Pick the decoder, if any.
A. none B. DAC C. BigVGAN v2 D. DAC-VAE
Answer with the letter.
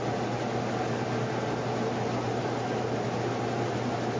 A